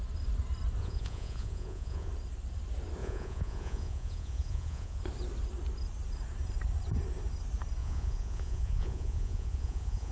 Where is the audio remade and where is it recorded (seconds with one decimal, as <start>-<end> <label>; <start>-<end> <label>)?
0.0-0.8 recorded; 0.8-2.1 remade; 2.1-3.0 recorded; 3.0-5.0 remade; 5.0-7.8 recorded; 7.8-10.1 remade